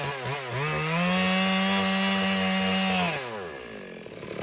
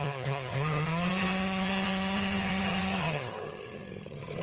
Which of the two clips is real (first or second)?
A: first